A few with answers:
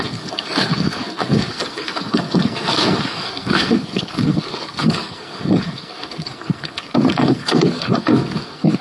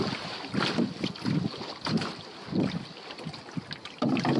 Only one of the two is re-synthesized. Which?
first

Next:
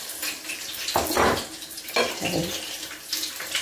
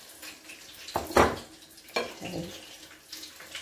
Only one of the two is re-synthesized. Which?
first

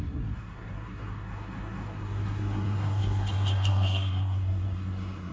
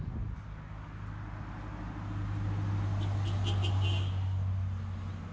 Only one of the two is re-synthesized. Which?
first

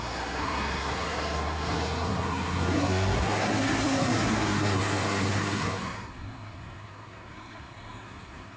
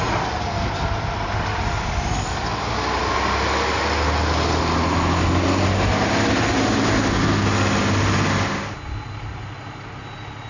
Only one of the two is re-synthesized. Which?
first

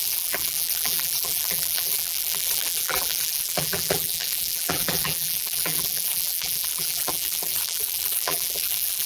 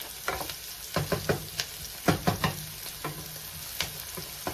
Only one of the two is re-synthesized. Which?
first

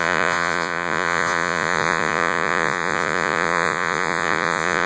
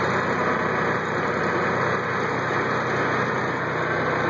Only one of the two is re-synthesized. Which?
first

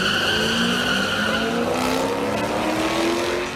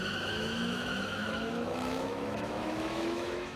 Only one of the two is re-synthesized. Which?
second